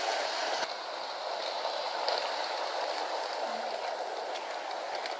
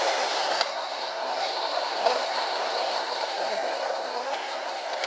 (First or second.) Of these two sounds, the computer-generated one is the second